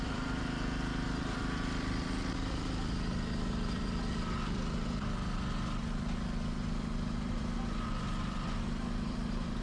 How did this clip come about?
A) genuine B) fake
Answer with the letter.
B